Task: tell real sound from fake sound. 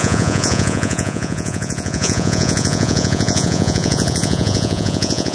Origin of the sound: fake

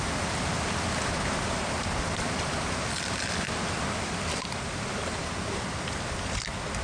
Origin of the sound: real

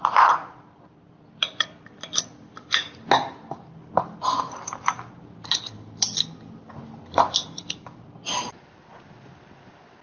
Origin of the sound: real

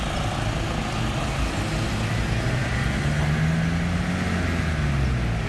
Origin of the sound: real